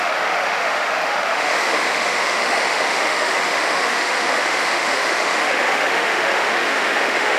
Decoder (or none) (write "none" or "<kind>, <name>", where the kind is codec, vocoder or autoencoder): autoencoder, DAC-VAE